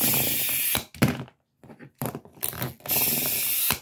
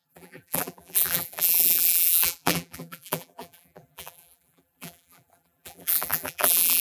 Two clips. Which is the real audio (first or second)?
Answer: first